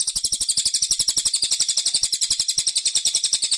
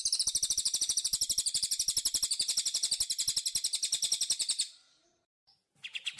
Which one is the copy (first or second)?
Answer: first